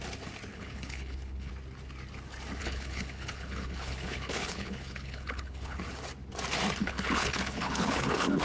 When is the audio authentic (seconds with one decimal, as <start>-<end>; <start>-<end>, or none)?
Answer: 0.0-0.5; 1.5-2.6; 5.8-6.8